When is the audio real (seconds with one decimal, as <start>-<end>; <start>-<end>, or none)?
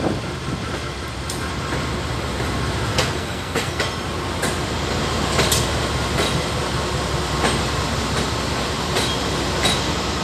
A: 0.0-2.9; 3.8-10.2